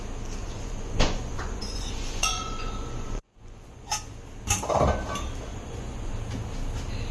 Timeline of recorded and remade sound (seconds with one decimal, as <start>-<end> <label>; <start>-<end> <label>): 0.0-0.4 recorded; 0.4-3.9 remade; 3.9-5.5 recorded; 5.5-6.1 remade; 6.1-7.1 recorded